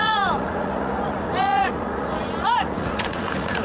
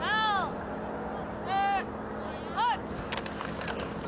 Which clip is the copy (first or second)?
first